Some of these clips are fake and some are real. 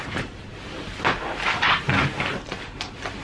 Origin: real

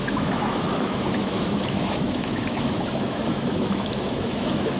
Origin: fake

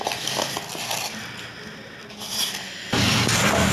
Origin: real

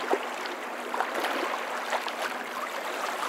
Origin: real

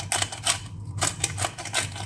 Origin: real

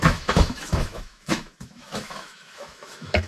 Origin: fake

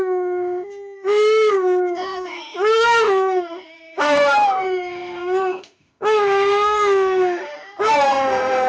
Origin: fake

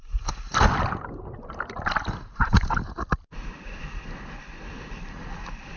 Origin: real